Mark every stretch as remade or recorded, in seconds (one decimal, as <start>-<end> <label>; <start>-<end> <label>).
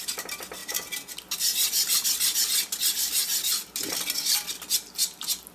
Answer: 0.0-5.5 recorded